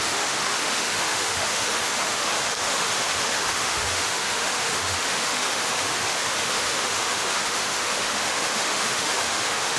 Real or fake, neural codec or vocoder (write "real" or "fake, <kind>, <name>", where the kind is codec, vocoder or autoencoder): fake, autoencoder, DAC-VAE